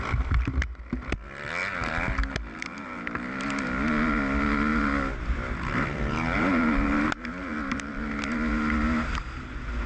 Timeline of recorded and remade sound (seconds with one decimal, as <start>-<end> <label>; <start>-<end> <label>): 0.0-4.7 recorded; 4.7-6.0 remade; 6.0-9.9 recorded